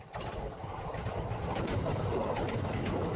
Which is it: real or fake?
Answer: fake